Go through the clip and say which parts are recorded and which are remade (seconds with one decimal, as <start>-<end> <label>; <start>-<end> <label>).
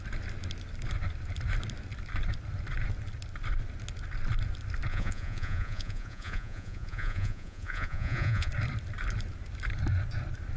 0.0-4.9 recorded; 4.9-8.5 remade; 8.5-10.6 recorded